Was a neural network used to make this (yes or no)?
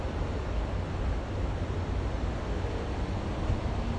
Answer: no